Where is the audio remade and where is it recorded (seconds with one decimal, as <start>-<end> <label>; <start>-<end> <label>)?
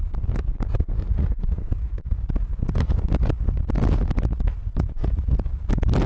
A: 0.0-1.0 recorded; 1.0-2.0 remade; 2.0-4.6 recorded; 4.6-5.3 remade; 5.3-6.1 recorded